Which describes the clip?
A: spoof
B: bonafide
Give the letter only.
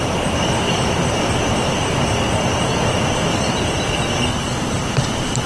A